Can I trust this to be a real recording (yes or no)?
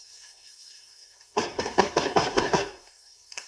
no